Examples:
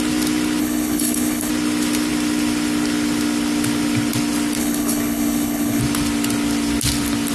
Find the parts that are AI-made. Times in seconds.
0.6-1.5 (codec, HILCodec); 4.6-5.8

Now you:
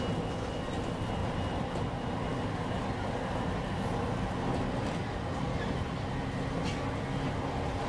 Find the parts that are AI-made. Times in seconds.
none